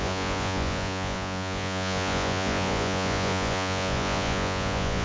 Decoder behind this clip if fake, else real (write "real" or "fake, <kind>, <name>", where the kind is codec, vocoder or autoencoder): fake, vocoder, Vocos